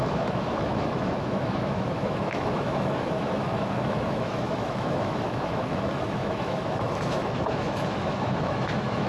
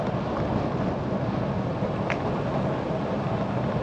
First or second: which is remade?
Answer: first